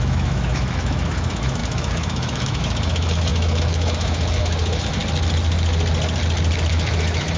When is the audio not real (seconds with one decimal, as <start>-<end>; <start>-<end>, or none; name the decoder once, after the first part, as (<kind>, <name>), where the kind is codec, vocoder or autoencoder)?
0.0-5.0 (autoencoder, DAC-VAE); 6.7-7.4